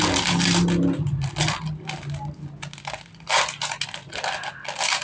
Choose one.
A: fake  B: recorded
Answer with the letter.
B